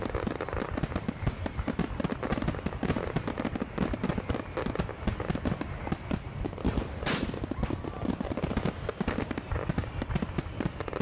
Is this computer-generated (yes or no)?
no